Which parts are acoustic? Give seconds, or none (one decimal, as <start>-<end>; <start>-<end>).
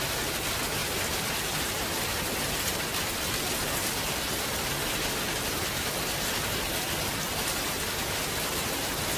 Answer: 0.0-9.2